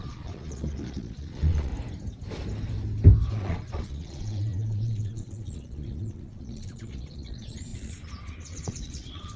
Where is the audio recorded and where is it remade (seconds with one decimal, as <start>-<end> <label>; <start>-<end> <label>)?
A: 0.0-1.7 remade; 1.7-3.3 recorded; 3.3-9.4 remade